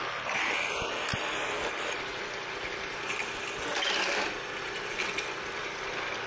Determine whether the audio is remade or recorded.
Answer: recorded